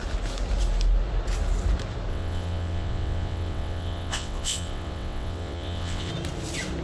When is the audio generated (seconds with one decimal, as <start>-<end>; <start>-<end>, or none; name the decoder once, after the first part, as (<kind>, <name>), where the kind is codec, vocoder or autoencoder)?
2.1-6.1 (vocoder, WaveNeXt)